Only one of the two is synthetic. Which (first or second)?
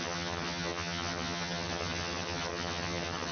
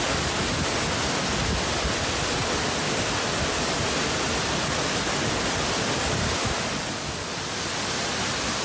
first